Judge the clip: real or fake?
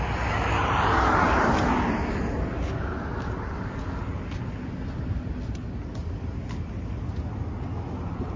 real